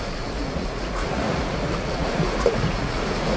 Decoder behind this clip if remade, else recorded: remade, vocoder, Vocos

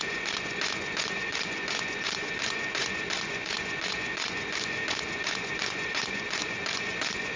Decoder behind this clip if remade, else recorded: remade, vocoder, Vocos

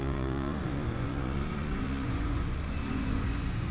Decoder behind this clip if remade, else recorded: remade, vocoder, Vocos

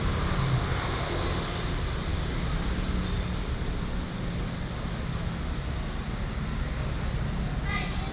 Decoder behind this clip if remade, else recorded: recorded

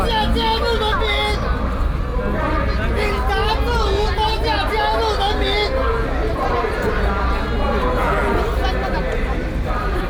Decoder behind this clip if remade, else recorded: recorded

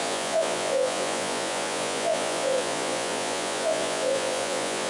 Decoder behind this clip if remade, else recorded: remade, vocoder, Vocos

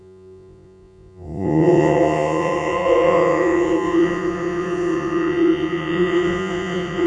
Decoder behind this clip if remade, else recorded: remade, vocoder, Vocos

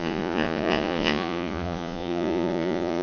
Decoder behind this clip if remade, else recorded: remade, vocoder, Vocos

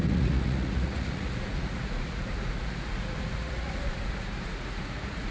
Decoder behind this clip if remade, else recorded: remade, vocoder, Vocos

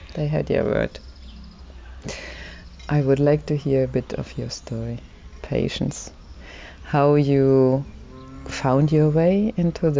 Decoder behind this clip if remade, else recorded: recorded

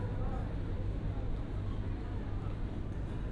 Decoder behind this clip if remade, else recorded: recorded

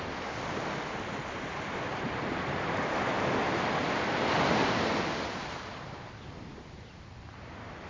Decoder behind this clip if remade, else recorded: recorded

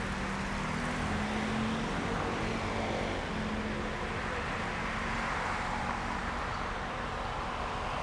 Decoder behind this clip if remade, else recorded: recorded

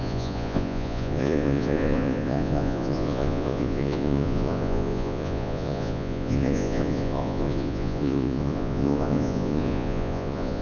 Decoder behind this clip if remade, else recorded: remade, vocoder, Vocos